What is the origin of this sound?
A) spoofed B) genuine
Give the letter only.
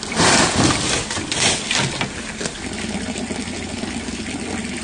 B